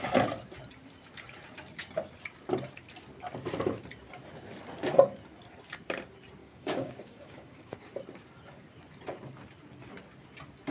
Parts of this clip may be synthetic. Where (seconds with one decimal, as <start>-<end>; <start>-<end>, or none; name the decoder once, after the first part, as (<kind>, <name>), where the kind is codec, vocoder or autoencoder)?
6.4-7.9 (codec, DAC)